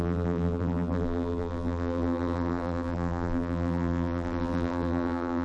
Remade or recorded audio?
remade